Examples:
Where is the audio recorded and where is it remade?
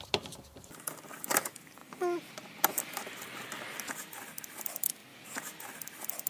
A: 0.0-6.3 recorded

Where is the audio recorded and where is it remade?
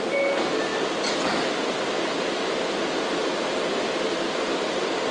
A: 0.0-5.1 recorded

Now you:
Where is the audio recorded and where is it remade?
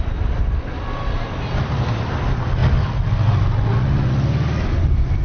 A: 0.0-2.6 recorded; 2.6-3.3 remade; 3.3-5.2 recorded